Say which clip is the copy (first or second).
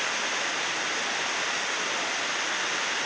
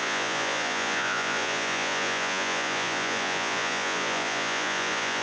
second